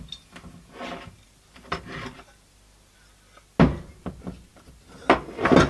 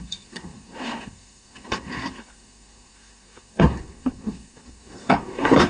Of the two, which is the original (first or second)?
first